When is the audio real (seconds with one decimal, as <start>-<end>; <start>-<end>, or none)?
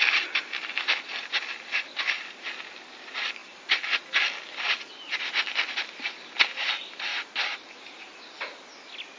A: 0.0-9.2